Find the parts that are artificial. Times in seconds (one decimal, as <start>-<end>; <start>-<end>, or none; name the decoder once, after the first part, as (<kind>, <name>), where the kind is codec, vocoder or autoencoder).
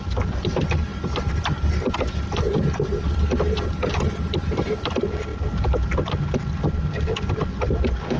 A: none